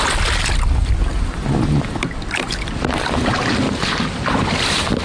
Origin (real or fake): real